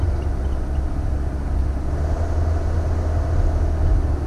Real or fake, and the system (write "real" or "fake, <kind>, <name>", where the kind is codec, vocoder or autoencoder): real